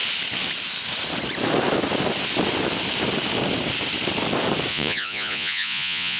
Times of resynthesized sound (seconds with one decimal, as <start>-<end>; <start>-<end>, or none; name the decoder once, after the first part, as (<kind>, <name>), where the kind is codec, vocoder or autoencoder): 4.7-6.2 (vocoder, Vocos)